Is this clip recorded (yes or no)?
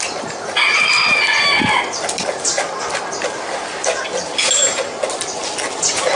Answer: yes